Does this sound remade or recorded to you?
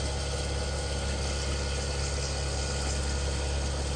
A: recorded